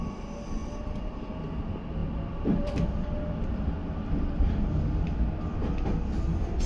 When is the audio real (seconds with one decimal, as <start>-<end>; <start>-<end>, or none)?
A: 0.0-0.6; 1.2-2.0; 3.7-6.7